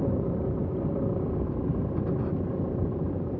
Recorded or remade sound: remade